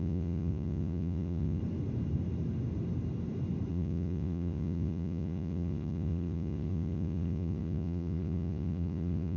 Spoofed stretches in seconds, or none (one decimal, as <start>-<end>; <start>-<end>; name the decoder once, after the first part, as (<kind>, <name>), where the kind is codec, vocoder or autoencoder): 0.0-1.6 (vocoder, Vocos); 3.7-9.4